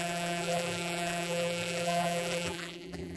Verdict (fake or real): fake